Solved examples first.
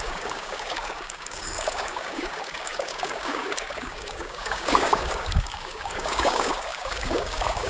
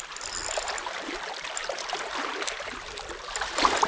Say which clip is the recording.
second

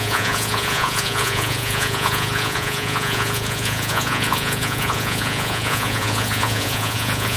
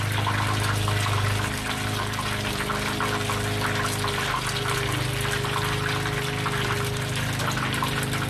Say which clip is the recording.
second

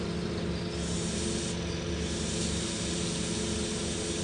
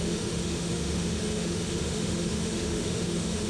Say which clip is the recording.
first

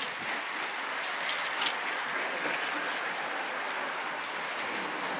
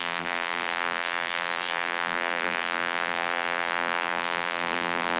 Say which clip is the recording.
first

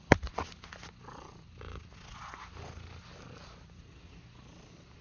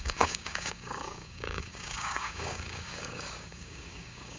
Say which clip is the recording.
first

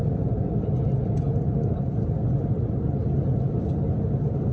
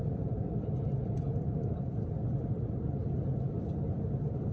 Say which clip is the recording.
first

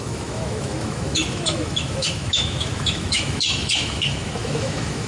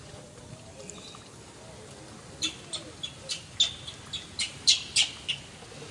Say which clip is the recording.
second